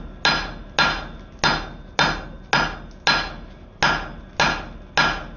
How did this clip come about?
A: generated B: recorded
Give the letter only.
B